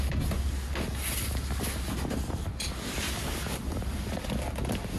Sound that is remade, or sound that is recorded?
recorded